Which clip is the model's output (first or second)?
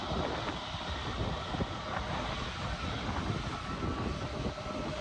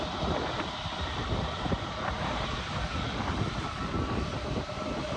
second